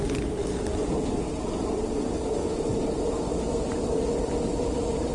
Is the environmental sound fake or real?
real